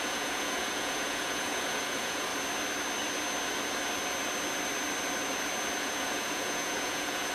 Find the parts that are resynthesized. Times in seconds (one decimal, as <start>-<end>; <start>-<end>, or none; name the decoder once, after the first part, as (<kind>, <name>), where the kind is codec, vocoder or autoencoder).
0.0-2.3 (vocoder, Vocos); 5.8-7.3